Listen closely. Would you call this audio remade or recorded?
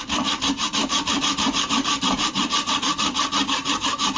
remade